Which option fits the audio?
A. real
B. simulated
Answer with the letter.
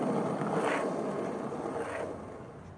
A